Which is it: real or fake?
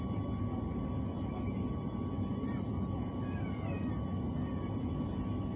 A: real